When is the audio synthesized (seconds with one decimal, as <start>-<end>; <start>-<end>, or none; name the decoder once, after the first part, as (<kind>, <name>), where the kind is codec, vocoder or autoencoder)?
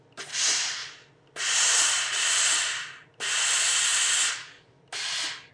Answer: none